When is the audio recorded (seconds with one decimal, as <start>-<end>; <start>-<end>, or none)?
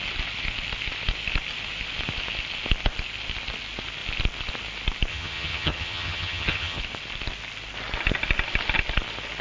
0.0-5.1; 6.8-9.4